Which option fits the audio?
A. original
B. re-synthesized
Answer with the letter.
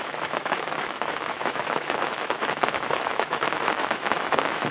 B